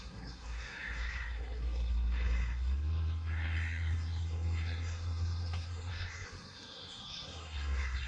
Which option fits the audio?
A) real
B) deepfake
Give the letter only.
B